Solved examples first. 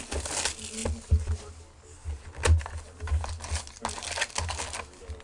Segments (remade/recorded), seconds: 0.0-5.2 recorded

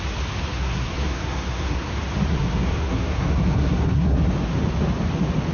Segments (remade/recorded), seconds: 0.0-0.4 recorded; 0.4-1.9 remade; 1.9-2.3 recorded; 2.3-4.3 remade; 4.3-5.5 recorded

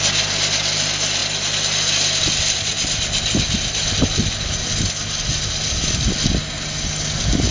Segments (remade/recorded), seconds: 0.0-7.5 recorded